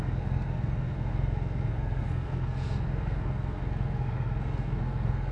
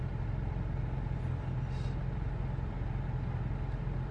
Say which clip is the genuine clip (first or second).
second